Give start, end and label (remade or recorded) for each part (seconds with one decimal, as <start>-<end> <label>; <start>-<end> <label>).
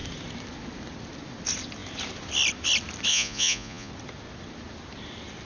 0.0-3.1 recorded; 3.1-3.9 remade; 3.9-5.5 recorded